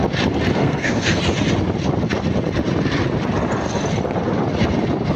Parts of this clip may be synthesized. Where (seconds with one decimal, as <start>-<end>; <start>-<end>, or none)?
0.6-1.2